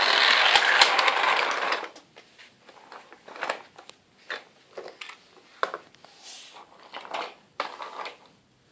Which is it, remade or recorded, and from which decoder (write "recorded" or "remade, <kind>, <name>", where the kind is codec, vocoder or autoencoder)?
recorded